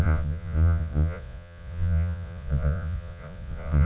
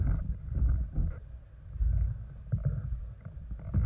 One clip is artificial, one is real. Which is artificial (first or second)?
first